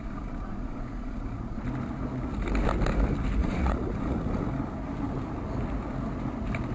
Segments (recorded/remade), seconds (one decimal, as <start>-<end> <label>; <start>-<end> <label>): 0.0-1.6 remade; 1.6-3.4 recorded; 3.4-4.5 remade; 4.5-6.7 recorded